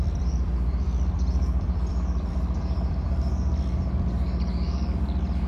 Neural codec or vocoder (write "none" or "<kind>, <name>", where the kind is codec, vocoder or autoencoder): vocoder, BigVGAN v2